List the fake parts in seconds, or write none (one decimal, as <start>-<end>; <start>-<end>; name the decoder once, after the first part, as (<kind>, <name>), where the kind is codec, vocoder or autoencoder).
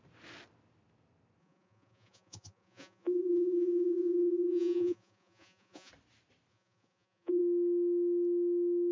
1.4-5.9 (vocoder, Vocos); 6.5-7.4